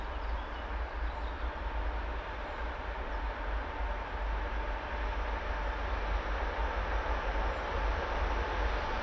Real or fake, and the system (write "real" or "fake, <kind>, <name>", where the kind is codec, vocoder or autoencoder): real